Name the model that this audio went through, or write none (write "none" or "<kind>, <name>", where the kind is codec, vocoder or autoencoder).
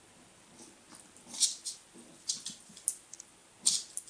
none